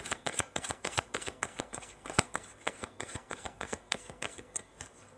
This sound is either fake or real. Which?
fake